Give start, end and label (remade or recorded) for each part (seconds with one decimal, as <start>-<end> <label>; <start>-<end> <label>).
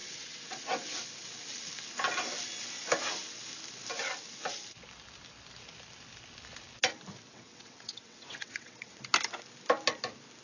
0.0-1.0 remade; 1.0-7.3 recorded; 7.3-9.0 remade; 9.0-10.4 recorded